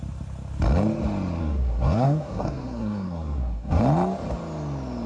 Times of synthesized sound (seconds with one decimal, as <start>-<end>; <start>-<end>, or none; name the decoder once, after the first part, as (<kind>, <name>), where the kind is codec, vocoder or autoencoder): 1.4-3.8 (codec, SNAC)